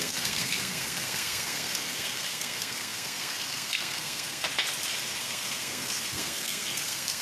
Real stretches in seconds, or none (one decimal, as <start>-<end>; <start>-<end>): 4.5-5.2